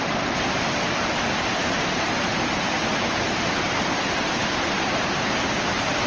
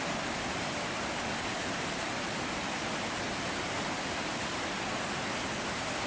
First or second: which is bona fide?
second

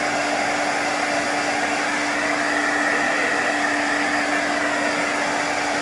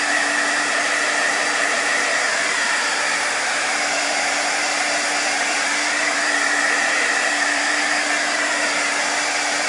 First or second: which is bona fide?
first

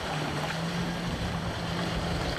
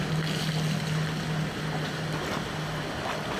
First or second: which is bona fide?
second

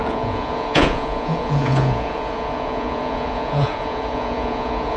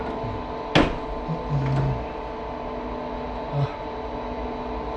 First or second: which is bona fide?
second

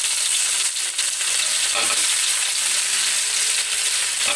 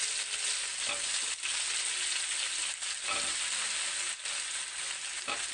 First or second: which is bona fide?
second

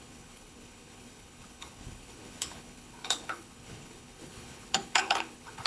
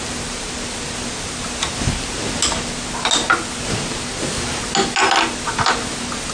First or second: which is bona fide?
second